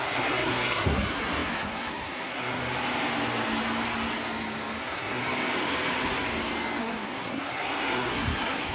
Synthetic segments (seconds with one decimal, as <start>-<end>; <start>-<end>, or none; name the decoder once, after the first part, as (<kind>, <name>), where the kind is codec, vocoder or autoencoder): 0.0-2.6 (codec, SNAC); 4.8-5.2; 6.8-8.7